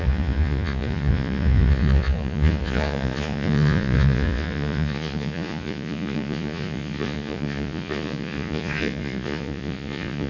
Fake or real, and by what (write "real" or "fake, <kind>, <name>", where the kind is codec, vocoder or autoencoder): fake, vocoder, Vocos